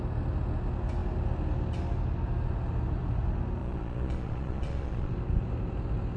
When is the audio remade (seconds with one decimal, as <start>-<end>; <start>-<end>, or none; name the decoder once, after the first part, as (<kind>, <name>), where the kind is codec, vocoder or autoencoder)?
3.6-5.1 (vocoder, Vocos)